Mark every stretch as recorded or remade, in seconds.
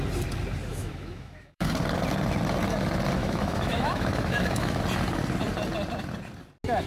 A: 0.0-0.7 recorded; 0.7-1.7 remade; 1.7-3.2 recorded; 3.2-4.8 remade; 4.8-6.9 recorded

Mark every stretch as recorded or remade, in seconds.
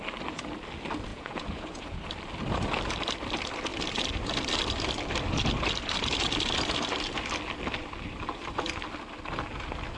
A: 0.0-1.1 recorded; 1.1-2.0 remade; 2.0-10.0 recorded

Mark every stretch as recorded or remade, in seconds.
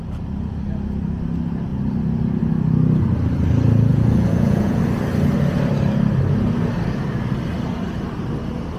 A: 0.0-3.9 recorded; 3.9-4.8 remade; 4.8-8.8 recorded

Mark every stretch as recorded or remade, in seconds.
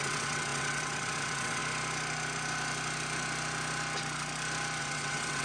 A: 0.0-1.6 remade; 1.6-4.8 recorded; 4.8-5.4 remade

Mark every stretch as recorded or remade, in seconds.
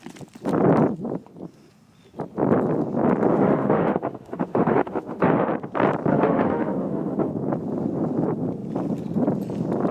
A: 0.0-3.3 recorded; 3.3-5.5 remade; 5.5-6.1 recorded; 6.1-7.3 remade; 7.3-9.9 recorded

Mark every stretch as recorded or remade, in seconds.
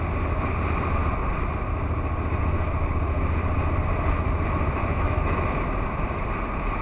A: 0.0-4.8 recorded; 4.8-5.6 remade; 5.6-6.8 recorded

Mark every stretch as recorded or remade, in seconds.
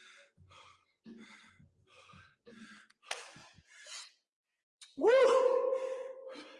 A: 0.0-3.4 recorded; 3.4-5.7 remade; 5.7-6.6 recorded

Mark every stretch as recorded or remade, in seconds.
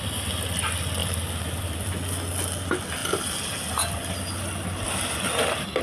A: 0.0-1.0 recorded; 1.0-1.9 remade; 1.9-5.8 recorded